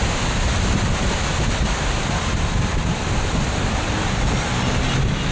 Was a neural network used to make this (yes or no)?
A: no